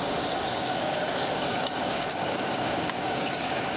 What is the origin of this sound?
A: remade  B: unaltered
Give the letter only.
A